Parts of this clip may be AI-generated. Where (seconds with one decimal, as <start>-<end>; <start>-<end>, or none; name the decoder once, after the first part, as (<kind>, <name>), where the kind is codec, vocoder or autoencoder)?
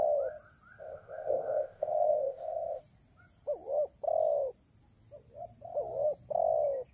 0.8-2.8 (codec, ZipCodec)